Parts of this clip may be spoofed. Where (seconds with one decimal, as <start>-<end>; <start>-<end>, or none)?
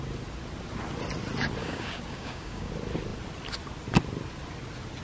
1.6-2.7